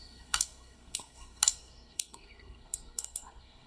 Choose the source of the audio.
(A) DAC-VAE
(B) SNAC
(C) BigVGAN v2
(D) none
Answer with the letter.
B